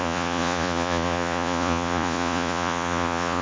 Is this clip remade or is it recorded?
remade